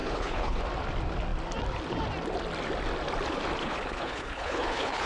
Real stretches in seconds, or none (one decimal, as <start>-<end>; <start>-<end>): 0.6-3.6